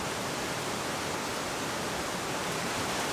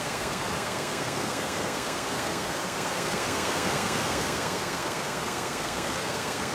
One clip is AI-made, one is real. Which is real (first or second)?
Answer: first